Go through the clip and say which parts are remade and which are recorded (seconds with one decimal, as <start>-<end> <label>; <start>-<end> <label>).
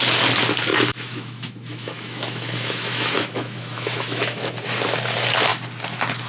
0.0-0.7 recorded; 0.7-4.5 remade; 4.5-6.3 recorded